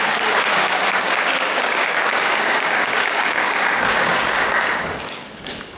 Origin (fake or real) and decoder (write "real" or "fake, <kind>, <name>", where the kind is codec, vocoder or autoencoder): fake, codec, DAC